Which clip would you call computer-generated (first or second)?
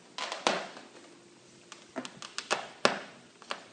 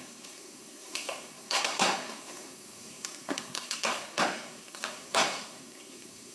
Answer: second